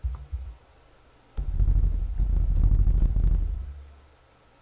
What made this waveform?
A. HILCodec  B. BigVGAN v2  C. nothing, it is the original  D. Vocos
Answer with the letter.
C